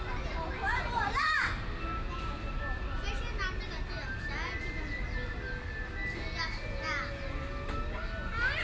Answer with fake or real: real